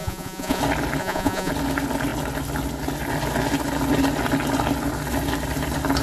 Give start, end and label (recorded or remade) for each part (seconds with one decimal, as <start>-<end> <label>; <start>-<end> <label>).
0.0-0.6 remade; 0.6-1.0 recorded; 1.0-1.5 remade; 1.5-6.0 recorded